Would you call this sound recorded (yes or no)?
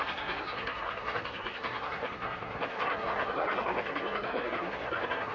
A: no